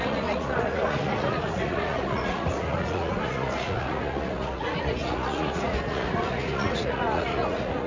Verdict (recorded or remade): remade